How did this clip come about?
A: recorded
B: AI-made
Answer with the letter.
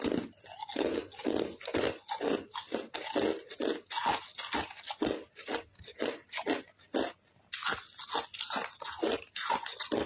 A